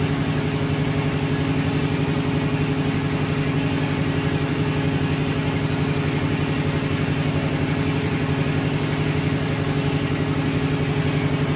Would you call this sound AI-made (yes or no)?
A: no